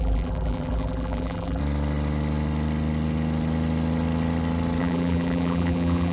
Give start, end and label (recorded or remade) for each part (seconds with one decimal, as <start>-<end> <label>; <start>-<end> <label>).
0.0-1.6 remade; 1.6-4.8 recorded; 4.8-6.1 remade